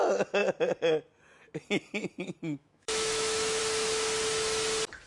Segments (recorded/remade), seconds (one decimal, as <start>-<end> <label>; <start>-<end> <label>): 0.0-2.6 recorded; 2.6-3.6 remade; 3.6-5.1 recorded